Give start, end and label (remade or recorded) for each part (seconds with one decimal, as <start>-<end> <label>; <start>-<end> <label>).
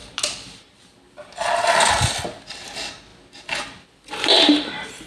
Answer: 0.0-5.1 recorded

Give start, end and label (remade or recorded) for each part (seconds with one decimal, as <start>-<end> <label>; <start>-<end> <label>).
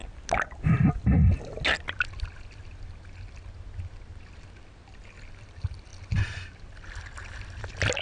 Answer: 0.0-8.0 recorded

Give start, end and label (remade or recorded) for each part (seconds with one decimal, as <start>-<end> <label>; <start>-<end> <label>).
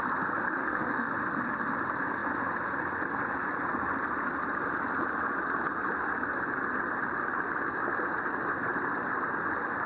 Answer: 0.0-0.6 recorded; 0.6-1.1 remade; 1.1-9.9 recorded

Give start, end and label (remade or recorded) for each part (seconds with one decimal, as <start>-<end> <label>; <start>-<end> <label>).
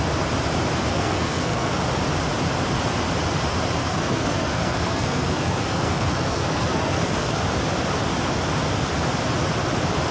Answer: 0.0-0.9 recorded; 0.9-1.8 remade; 1.8-3.8 recorded; 3.8-7.4 remade; 7.4-10.1 recorded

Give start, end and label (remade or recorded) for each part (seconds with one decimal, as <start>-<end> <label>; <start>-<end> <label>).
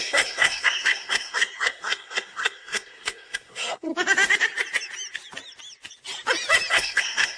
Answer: 0.0-3.9 remade; 3.9-6.7 recorded; 6.7-7.4 remade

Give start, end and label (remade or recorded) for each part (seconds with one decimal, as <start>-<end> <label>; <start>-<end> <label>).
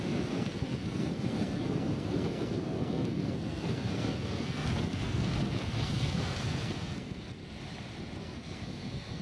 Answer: 0.0-7.4 remade; 7.4-8.2 recorded; 8.2-9.2 remade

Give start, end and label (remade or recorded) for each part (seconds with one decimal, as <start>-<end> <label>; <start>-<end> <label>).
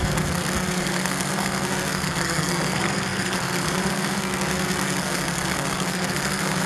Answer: 0.0-6.7 remade